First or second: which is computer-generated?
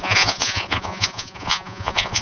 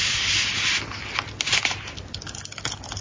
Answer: first